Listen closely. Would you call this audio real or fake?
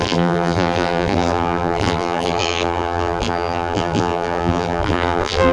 fake